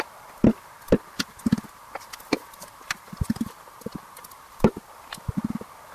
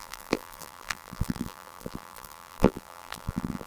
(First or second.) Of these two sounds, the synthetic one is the second